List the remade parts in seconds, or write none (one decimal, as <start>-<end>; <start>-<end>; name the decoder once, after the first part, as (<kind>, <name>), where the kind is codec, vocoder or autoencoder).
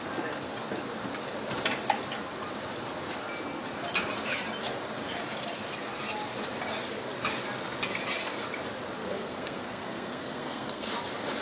9.0-10.9 (codec, SNAC)